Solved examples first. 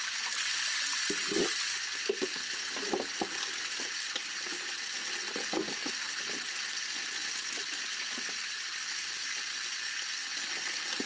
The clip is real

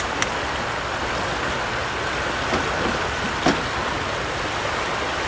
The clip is real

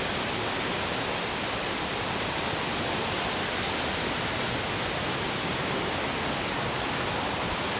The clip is real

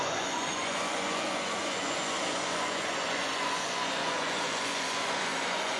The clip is fake